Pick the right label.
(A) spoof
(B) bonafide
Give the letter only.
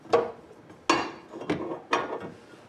B